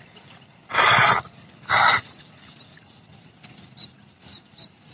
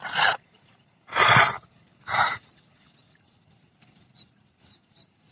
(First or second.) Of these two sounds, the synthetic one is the second